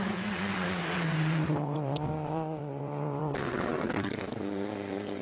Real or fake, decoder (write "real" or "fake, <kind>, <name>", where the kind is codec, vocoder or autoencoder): fake, vocoder, WaveNeXt